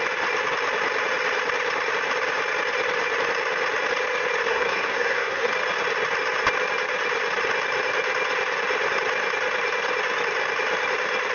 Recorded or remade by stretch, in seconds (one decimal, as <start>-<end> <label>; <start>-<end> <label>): 0.0-4.5 recorded; 4.5-5.5 remade; 5.5-11.3 recorded